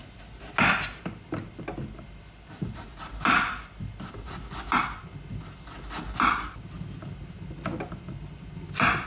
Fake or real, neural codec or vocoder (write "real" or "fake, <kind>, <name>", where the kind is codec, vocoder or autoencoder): real